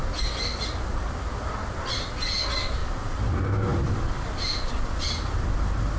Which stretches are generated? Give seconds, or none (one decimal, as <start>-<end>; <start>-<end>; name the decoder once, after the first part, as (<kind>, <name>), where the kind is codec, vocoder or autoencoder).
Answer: 2.8-3.3 (vocoder, BigVGAN v2); 3.7-4.7